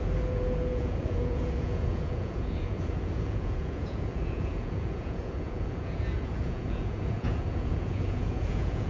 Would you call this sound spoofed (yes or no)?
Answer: yes